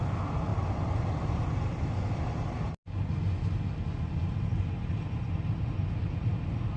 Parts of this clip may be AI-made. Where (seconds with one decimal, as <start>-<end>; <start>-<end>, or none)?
none